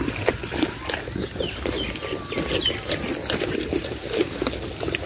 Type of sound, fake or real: real